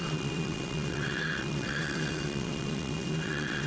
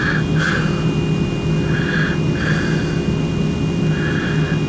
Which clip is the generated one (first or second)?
first